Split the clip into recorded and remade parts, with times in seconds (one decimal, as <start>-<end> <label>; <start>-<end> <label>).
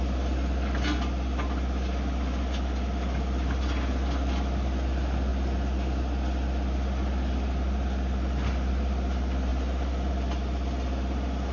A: 0.0-11.5 recorded